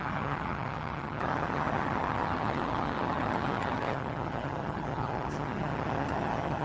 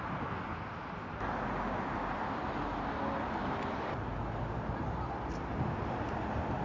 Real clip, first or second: second